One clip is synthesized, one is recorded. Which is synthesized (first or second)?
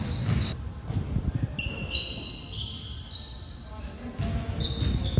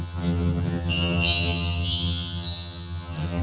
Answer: second